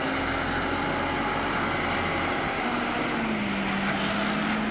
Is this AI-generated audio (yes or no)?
no